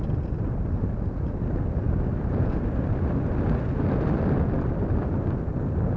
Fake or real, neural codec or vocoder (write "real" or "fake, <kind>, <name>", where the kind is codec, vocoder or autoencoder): fake, vocoder, BigVGAN v2